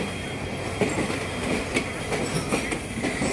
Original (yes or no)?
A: yes